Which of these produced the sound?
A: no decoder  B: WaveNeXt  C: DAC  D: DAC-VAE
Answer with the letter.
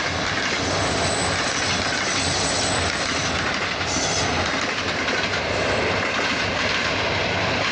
A